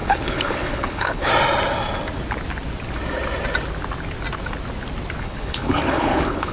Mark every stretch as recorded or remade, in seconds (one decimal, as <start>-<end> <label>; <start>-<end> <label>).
0.0-1.3 remade; 1.3-5.2 recorded; 5.2-6.5 remade